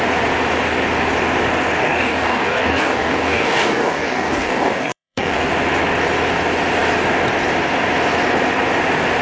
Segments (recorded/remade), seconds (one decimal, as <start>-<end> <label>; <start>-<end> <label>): 0.0-1.8 recorded; 1.8-5.5 remade; 5.5-9.2 recorded